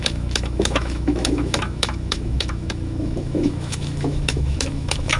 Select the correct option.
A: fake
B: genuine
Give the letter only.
A